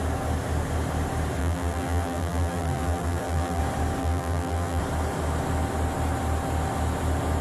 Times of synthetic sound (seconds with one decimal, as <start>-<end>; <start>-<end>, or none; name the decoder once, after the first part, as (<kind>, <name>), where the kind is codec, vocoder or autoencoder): 1.4-3.6 (vocoder, BigVGAN v2); 4.0-4.8